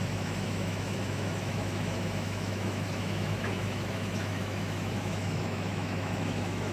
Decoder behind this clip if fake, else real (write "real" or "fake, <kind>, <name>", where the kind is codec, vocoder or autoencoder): fake, autoencoder, DAC-VAE